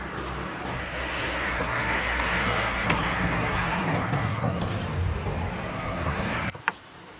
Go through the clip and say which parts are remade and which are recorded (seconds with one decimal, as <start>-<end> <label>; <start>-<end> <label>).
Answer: 0.0-0.7 recorded; 0.7-4.6 remade; 4.6-5.7 recorded; 5.7-6.6 remade; 6.6-7.2 recorded